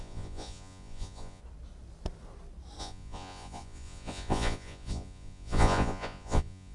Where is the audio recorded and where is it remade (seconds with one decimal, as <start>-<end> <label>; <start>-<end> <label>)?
0.0-1.4 remade; 1.4-2.8 recorded; 2.8-6.7 remade